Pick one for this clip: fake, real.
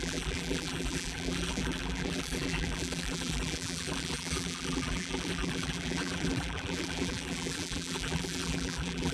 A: fake